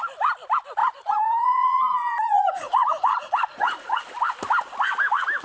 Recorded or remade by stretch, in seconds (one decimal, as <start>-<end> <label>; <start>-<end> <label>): 0.0-0.8 recorded; 0.8-4.0 remade; 4.0-5.4 recorded